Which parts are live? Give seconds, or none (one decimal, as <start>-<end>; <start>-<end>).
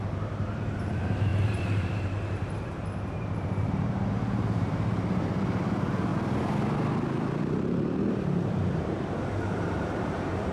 6.1-7.4